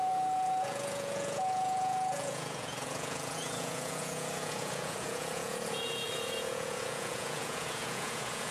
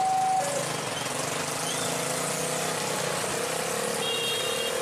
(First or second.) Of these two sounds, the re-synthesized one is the first